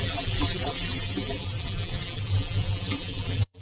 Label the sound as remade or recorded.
remade